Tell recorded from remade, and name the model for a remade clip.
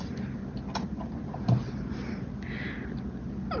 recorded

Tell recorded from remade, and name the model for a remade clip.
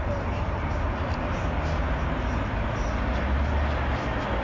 recorded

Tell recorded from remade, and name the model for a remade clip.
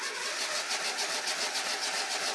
recorded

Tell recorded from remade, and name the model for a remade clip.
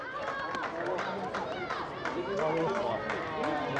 recorded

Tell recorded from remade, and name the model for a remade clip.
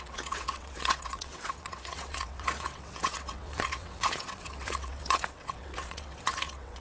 remade, vocoder, WaveNeXt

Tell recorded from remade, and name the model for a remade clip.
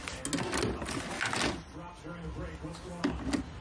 recorded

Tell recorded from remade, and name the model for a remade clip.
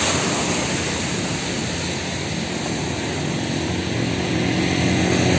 recorded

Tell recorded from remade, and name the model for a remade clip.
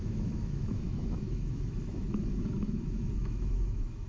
remade, autoencoder, DAC-VAE